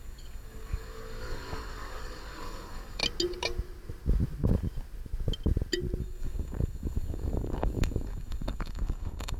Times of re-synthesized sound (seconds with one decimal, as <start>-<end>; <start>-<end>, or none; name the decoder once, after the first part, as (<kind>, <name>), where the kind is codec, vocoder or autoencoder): 0.0-3.0 (codec, DAC); 6.0-9.4